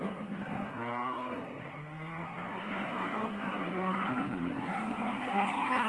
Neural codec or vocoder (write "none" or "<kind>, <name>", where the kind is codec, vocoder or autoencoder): codec, SNAC